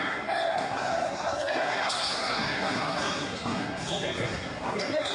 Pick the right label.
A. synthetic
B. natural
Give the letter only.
A